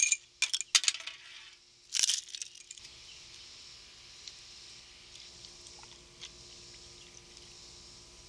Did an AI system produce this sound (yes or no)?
no